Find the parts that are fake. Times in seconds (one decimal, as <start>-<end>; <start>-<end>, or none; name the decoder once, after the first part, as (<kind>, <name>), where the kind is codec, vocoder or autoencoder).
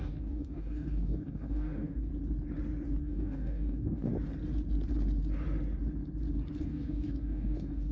0.0-2.1 (codec, DAC); 3.0-4.1; 6.6-7.9